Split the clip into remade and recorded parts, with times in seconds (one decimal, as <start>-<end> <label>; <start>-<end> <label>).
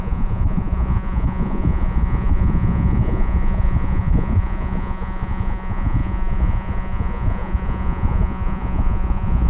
0.0-9.5 remade